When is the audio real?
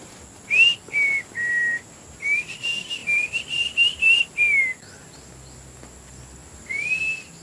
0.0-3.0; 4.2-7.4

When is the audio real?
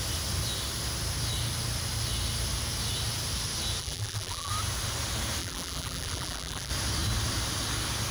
0.0-3.8; 4.5-5.4; 6.7-8.1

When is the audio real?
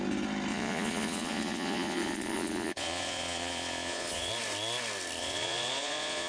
0.0-0.5; 4.3-5.2